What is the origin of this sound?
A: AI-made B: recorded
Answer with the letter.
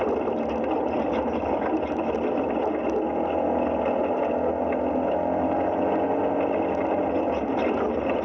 B